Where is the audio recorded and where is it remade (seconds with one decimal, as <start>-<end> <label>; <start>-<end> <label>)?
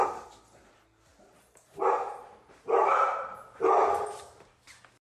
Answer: 0.0-1.1 recorded; 1.1-4.2 remade; 4.2-5.1 recorded